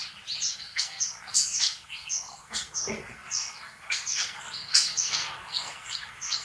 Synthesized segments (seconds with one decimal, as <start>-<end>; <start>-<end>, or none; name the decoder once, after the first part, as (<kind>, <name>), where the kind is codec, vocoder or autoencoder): 0.5-6.4 (codec, SNAC)